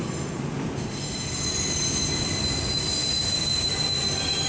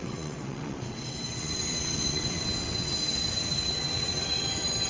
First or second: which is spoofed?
second